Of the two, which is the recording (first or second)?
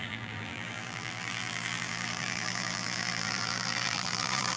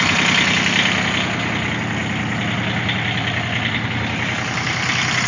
second